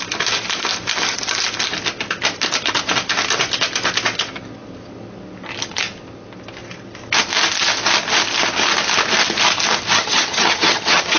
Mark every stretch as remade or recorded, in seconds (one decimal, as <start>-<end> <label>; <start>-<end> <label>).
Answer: 0.0-9.9 recorded; 9.9-11.2 remade